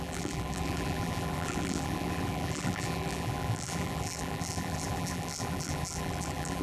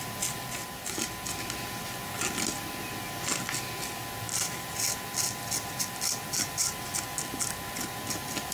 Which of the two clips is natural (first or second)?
second